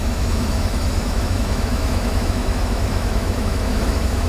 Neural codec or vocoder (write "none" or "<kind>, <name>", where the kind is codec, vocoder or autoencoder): autoencoder, DAC-VAE